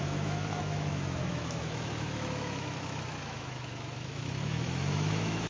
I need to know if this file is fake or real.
fake